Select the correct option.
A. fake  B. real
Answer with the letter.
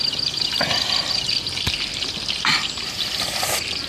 A